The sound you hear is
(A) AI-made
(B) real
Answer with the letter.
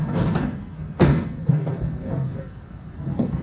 A